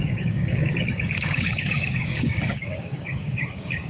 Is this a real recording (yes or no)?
no